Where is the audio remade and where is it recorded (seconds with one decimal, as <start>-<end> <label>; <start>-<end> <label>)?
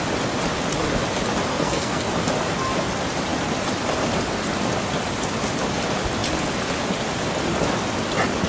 0.0-1.5 recorded; 1.5-2.1 remade; 2.1-8.5 recorded